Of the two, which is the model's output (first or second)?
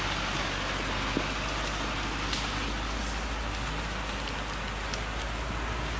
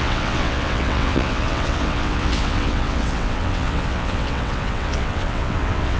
second